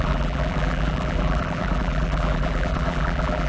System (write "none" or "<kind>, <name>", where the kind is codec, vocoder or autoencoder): vocoder, BigVGAN v2